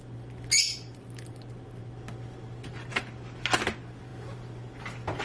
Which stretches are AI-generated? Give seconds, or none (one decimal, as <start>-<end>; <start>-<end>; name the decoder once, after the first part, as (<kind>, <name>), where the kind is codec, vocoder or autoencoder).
none